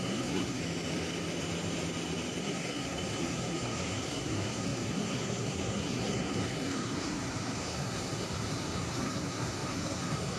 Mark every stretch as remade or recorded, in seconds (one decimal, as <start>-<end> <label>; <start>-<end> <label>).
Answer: 0.0-0.6 remade; 0.6-2.4 recorded; 2.4-10.4 remade